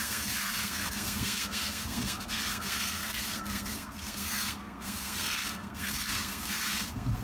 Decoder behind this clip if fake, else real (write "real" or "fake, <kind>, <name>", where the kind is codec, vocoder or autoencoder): fake, codec, SNAC